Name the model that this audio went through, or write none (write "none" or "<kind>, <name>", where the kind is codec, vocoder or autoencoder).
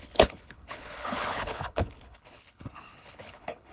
codec, HILCodec